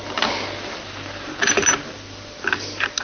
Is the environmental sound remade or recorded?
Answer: recorded